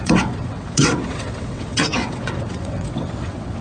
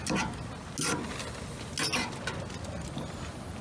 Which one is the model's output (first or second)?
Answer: first